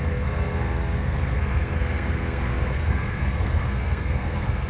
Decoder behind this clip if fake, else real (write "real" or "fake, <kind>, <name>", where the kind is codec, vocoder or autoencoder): fake, codec, SNAC